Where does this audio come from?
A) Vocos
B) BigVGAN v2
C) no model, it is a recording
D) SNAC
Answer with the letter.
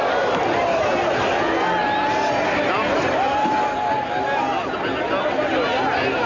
C